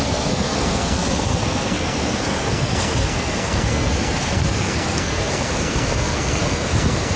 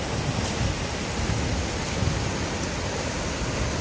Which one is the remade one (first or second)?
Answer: first